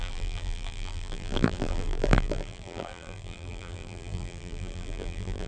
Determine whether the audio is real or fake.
fake